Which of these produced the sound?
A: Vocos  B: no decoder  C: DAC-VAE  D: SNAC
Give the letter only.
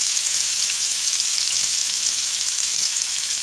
C